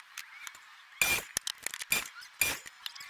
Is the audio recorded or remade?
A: recorded